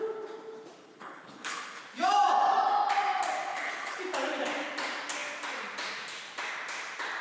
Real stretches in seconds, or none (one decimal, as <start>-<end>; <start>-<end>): 0.0-0.8; 1.8-3.5; 4.0-7.2